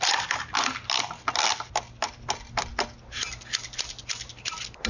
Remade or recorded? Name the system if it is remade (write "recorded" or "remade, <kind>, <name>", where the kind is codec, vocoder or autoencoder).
recorded